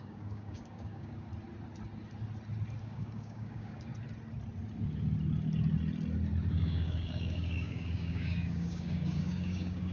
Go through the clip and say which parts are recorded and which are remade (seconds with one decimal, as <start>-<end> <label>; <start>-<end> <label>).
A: 0.0-1.3 remade; 1.3-2.8 recorded; 2.8-3.9 remade; 3.9-6.5 recorded; 6.5-9.9 remade